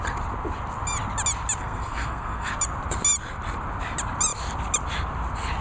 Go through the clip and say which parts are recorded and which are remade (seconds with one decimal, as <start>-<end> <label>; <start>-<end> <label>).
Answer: 0.0-1.6 recorded; 1.6-2.5 remade; 2.5-5.6 recorded